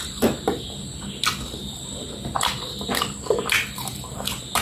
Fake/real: real